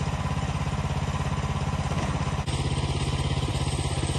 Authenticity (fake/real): real